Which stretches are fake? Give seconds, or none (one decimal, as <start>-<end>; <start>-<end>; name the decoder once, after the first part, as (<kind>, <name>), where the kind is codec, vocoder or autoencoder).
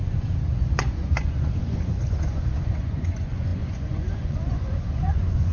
0.0-5.5 (vocoder, Vocos)